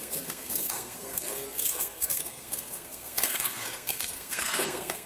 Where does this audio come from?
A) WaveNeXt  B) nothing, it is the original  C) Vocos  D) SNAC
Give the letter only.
D